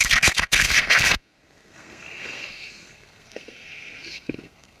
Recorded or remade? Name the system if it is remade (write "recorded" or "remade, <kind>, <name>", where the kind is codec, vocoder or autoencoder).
remade, codec, SNAC